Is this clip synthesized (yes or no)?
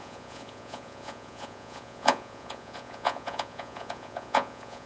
yes